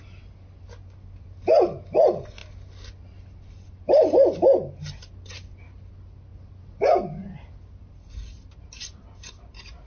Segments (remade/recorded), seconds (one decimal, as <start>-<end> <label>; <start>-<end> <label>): 0.0-9.9 recorded

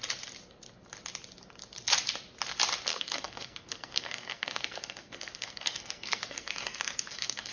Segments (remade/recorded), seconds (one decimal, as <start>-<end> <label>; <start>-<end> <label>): 0.0-2.9 recorded; 2.9-7.5 remade

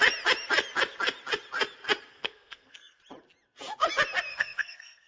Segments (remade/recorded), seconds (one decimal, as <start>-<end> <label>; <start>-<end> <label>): 0.0-2.1 recorded; 2.1-3.0 remade; 3.0-4.3 recorded; 4.3-5.1 remade

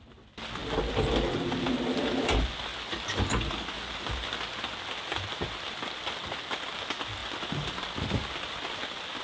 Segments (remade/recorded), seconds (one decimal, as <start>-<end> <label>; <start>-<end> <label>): 0.0-9.2 recorded

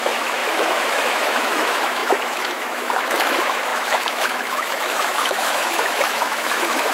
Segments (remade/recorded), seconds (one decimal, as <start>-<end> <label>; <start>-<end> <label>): 0.0-6.9 remade